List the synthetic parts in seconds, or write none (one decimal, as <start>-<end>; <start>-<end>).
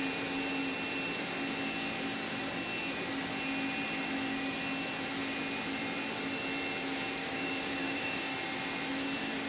7.2-8.3